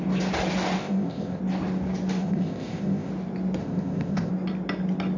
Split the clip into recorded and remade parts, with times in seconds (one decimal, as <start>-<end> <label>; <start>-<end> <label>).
0.0-0.8 recorded; 0.8-1.4 remade; 1.4-2.2 recorded; 2.2-3.1 remade; 3.1-3.6 recorded; 3.6-4.3 remade; 4.3-5.2 recorded